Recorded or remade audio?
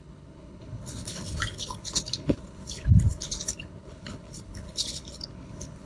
remade